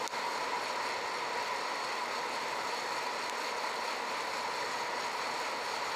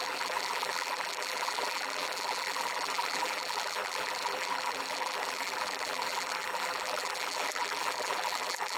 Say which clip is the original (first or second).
first